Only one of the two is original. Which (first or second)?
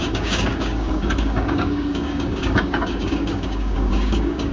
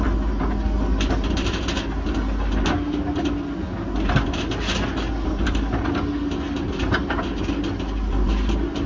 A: second